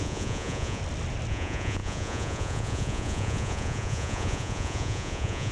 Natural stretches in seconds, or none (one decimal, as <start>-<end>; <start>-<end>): 0.8-1.3